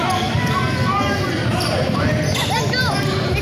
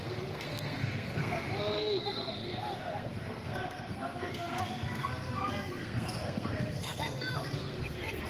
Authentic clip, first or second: first